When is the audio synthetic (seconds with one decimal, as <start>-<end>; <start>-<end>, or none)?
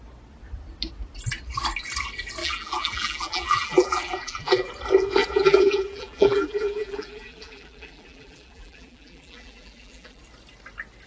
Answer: 2.4-4.7; 5.2-10.2